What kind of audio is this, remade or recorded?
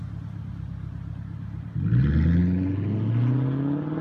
recorded